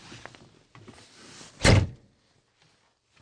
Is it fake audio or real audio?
real